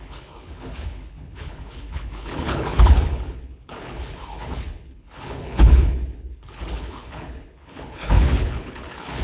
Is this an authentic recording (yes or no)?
no